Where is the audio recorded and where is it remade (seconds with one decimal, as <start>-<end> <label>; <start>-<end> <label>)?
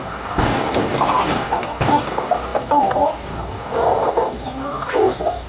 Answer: 0.0-5.5 remade